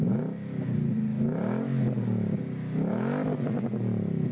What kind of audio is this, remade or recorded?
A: recorded